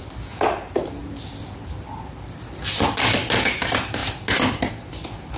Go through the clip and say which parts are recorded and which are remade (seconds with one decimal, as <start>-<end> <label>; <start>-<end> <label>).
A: 0.0-5.4 recorded